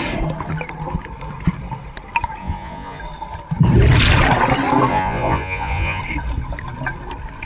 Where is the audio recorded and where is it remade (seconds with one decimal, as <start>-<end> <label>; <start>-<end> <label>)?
0.0-2.4 recorded; 2.4-3.0 remade; 3.0-4.9 recorded; 4.9-6.0 remade; 6.0-7.5 recorded